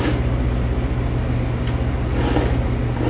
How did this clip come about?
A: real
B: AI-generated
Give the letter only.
A